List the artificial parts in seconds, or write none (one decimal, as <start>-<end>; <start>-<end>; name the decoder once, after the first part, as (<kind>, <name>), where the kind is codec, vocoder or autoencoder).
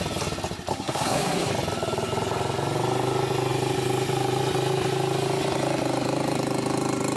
0.7-1.5 (codec, SNAC)